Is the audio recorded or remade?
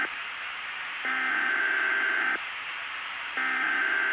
remade